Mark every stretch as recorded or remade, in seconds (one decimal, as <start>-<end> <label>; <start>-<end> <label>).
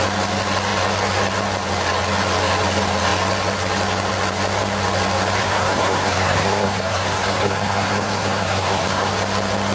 0.0-5.4 recorded; 5.4-9.1 remade; 9.1-9.7 recorded